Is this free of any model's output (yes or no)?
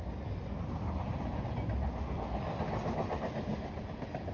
yes